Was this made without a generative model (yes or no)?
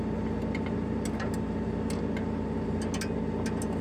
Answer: yes